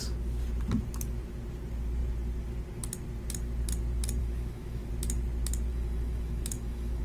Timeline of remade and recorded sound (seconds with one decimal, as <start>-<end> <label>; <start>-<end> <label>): 0.0-4.2 recorded; 4.2-4.9 remade; 4.9-5.7 recorded; 5.7-7.0 remade